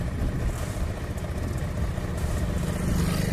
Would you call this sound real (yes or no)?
yes